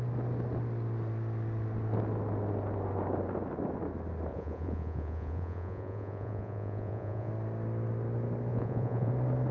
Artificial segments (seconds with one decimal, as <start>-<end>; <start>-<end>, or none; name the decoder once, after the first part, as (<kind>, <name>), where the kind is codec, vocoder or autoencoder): 4.3-7.3 (vocoder, Vocos); 8.5-9.1